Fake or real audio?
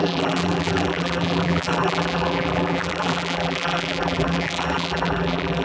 fake